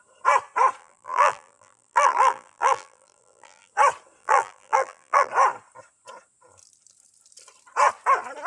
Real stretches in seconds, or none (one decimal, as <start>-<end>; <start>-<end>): 0.0-0.8; 3.7-4.2; 5.3-8.5